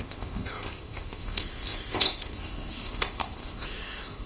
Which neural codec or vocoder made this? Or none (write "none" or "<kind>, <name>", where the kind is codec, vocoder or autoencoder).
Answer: codec, ZipCodec